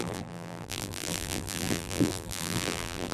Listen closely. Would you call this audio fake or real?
fake